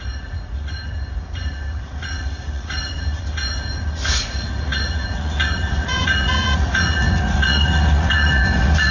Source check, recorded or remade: remade